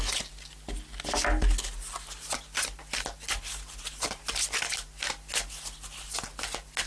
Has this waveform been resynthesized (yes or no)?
no